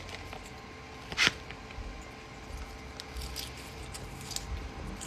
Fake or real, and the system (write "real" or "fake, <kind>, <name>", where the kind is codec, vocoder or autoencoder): real